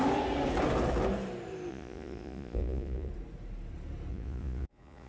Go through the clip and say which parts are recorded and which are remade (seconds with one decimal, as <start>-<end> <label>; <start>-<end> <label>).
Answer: 0.0-1.7 recorded; 1.7-3.1 remade; 3.1-4.1 recorded; 4.1-5.1 remade